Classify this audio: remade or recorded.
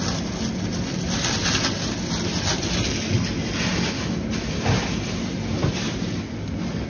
recorded